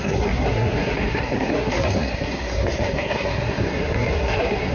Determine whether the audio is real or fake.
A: fake